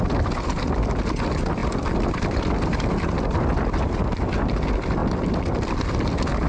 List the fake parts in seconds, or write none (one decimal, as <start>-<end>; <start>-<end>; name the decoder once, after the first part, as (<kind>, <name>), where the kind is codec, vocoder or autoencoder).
none